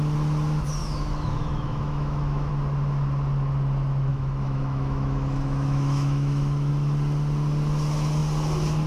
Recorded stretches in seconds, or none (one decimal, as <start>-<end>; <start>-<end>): 0.0-0.8; 2.5-4.1; 6.7-8.9